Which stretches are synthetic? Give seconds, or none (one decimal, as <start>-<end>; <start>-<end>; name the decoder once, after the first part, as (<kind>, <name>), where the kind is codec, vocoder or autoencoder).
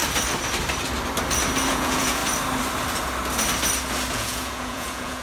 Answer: 1.7-2.2 (vocoder, Vocos); 4.1-5.2